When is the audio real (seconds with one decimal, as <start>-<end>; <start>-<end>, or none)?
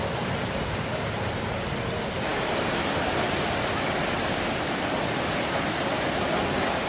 0.0-6.9